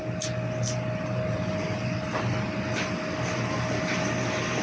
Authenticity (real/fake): real